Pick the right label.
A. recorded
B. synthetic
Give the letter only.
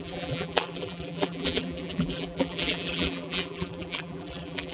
B